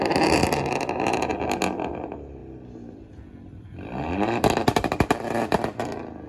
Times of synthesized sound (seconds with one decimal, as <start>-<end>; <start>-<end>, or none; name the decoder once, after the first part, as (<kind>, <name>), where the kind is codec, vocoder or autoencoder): 0.0-0.4 (vocoder, BigVGAN v2); 0.9-1.3; 1.9-2.4